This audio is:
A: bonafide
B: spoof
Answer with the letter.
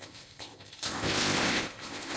B